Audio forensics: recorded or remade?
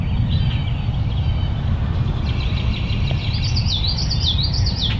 recorded